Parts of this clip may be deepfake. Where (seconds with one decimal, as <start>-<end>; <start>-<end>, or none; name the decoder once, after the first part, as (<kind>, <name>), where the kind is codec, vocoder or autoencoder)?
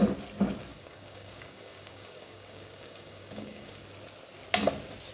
0.7-3.8 (codec, DAC)